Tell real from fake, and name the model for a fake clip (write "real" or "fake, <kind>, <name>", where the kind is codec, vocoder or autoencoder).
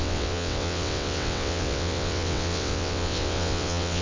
fake, vocoder, WaveNeXt